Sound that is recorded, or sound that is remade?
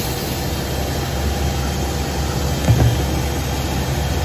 recorded